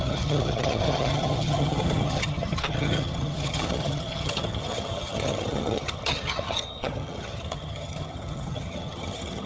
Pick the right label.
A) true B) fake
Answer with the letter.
B